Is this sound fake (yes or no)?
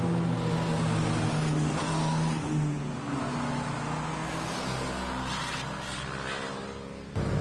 no